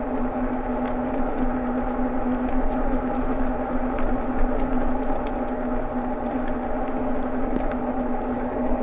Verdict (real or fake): real